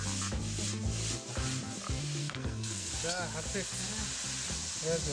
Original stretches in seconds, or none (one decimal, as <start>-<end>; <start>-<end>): 0.0-2.2; 2.9-5.1